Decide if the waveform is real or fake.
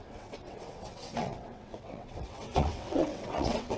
fake